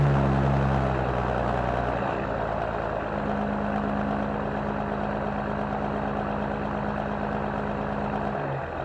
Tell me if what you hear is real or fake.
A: real